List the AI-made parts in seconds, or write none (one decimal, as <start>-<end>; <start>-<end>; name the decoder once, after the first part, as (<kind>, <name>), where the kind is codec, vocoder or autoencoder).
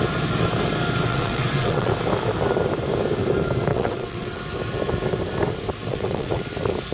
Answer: 1.1-1.9 (vocoder, WaveNeXt); 3.7-4.4; 5.9-6.4